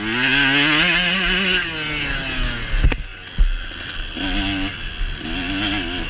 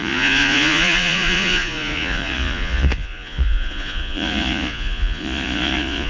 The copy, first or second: second